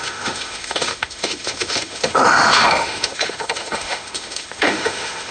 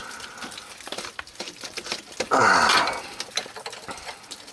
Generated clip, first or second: first